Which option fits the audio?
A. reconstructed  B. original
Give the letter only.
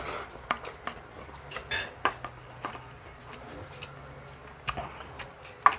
B